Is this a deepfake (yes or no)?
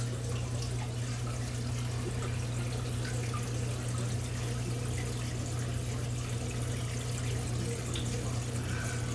no